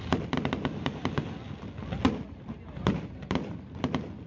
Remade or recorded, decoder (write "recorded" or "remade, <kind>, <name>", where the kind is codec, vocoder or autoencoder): recorded